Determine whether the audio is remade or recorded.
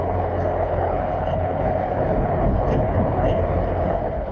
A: remade